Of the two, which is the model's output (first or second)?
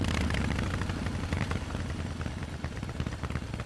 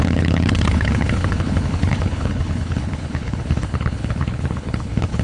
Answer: second